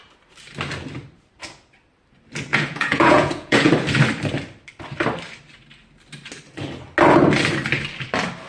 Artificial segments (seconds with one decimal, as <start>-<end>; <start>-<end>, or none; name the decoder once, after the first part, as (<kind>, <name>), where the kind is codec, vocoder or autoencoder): 2.5-3.7 (vocoder, Vocos)